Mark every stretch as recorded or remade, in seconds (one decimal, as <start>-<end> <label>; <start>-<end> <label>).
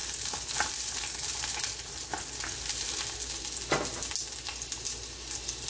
0.0-3.4 remade; 3.4-5.7 recorded